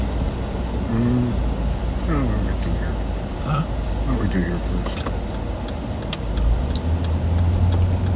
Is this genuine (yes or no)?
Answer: yes